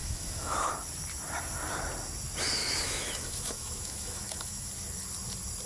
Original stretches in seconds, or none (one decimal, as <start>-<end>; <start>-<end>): 0.7-2.6; 4.7-5.7